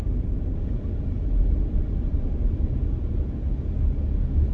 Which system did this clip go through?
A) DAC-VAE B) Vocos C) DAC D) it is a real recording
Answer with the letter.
D